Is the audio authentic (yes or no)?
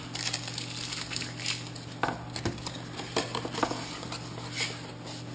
yes